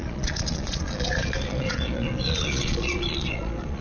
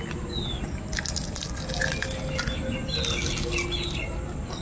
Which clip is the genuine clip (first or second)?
second